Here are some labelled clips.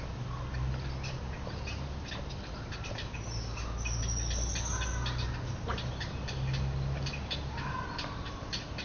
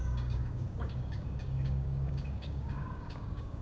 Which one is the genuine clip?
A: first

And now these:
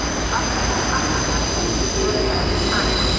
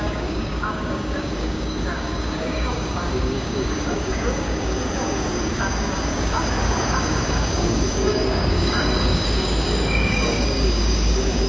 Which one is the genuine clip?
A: first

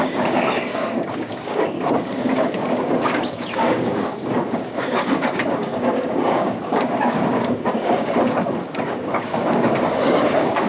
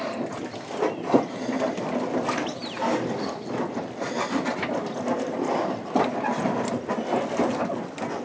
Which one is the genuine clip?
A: second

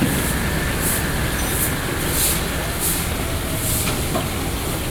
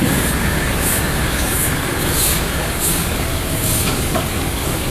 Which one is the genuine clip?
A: first